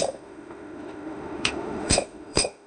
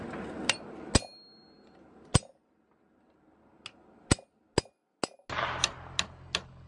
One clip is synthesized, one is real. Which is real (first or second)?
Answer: second